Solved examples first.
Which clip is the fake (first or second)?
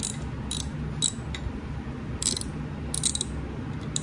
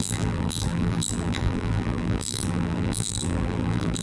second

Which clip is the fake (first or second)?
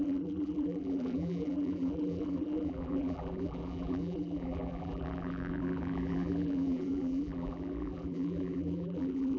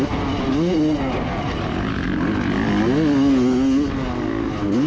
first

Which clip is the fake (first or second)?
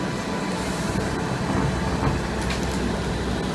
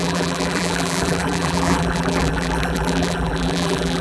second